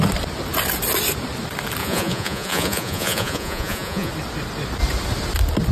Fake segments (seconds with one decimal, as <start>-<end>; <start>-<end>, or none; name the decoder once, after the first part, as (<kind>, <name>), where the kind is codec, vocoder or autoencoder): 1.8-4.1 (vocoder, Vocos)